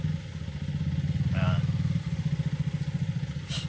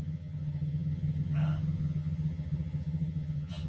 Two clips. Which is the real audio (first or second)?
first